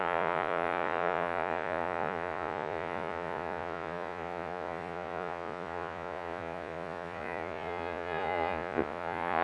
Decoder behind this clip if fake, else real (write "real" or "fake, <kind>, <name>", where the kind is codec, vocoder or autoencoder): fake, vocoder, Vocos